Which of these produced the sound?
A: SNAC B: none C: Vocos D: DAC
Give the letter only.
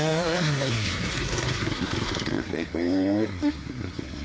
A